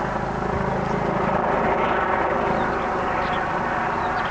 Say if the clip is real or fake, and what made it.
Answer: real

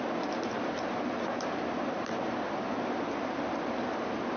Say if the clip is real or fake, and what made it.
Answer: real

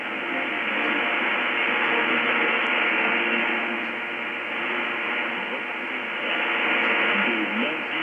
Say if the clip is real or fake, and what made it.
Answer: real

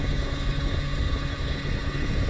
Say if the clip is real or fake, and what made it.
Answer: fake, codec, HILCodec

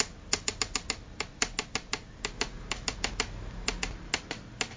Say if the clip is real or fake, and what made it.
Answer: real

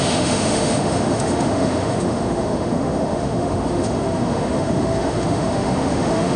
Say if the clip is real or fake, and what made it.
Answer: fake, autoencoder, DAC-VAE